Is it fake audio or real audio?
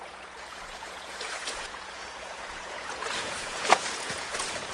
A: fake